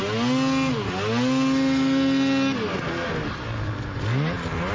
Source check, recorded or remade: recorded